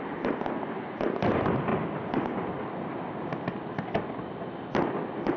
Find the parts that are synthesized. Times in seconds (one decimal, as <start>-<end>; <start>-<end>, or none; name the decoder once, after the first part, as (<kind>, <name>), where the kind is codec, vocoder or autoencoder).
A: none